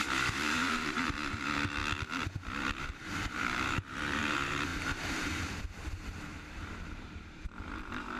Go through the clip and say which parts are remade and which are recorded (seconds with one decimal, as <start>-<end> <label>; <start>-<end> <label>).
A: 0.0-1.8 remade; 1.8-2.8 recorded; 2.8-8.2 remade